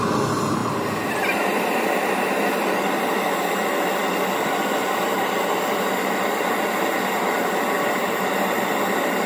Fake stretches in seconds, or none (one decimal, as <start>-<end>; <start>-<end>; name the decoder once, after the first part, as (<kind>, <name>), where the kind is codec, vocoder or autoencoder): 0.6-1.1 (vocoder, BigVGAN v2)